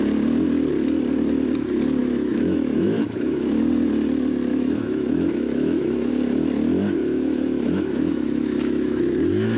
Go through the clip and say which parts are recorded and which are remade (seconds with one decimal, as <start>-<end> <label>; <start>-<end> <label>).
0.0-2.0 recorded; 2.0-3.6 remade; 3.6-4.5 recorded; 4.5-6.1 remade; 6.1-7.0 recorded; 7.0-9.0 remade; 9.0-9.6 recorded